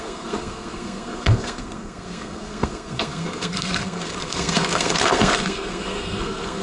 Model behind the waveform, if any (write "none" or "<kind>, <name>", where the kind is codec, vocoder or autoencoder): codec, SNAC